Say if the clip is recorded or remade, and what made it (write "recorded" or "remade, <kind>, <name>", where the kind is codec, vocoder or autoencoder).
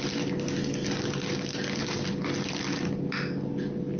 recorded